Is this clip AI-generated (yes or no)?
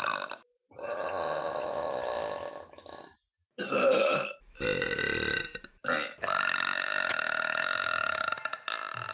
no